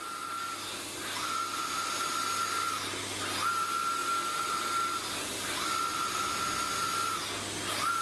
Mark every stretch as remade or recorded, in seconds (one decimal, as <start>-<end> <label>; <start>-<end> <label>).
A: 0.0-4.0 recorded; 4.0-5.5 remade; 5.5-8.0 recorded